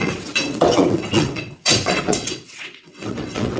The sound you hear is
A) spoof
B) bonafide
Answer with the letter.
A